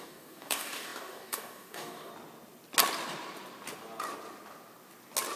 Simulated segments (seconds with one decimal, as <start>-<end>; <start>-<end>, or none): 0.0-2.1